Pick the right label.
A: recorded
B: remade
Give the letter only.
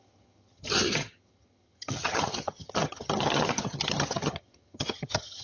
B